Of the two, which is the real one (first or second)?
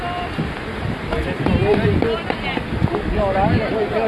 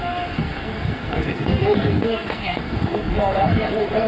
first